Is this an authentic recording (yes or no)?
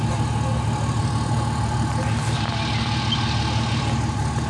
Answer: yes